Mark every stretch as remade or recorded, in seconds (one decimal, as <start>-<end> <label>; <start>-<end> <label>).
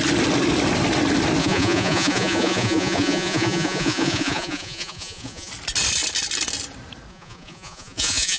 0.0-1.4 recorded; 1.4-5.5 remade; 5.5-7.1 recorded; 7.1-8.4 remade